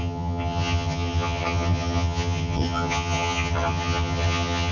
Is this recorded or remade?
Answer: remade